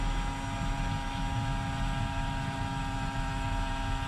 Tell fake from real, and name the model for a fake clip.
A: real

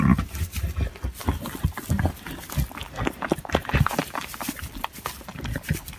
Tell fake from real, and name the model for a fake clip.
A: real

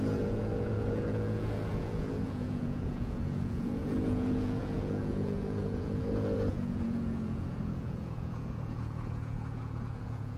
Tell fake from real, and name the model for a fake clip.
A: fake, vocoder, Vocos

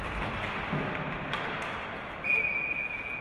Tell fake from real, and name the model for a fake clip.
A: real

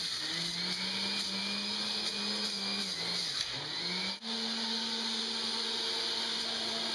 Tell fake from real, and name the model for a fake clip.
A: real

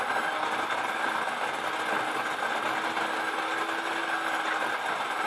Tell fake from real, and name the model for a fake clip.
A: real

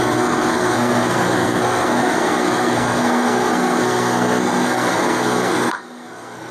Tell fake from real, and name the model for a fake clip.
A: fake, codec, SNAC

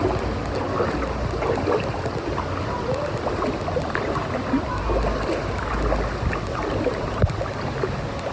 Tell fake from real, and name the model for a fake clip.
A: real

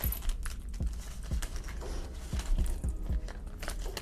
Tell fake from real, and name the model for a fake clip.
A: real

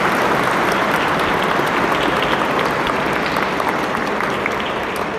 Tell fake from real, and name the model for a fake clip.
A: real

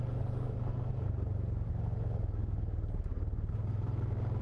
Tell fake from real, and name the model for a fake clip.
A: real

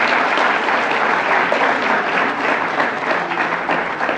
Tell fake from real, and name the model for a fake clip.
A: real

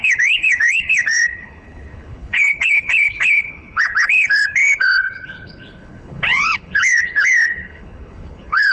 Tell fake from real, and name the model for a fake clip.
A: fake, codec, HILCodec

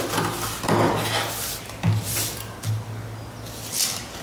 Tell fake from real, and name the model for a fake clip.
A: real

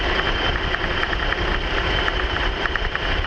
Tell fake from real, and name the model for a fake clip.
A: real